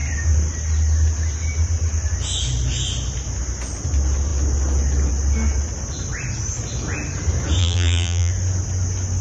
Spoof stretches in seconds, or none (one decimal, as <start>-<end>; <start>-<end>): 7.6-8.3